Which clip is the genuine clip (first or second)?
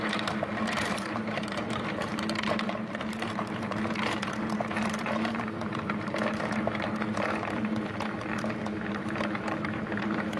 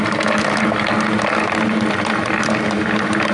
second